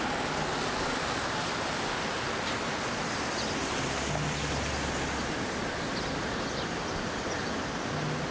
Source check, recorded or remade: recorded